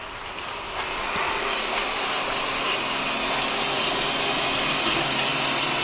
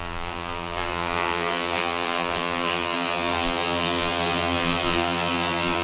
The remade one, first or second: second